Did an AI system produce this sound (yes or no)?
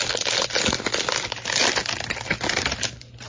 no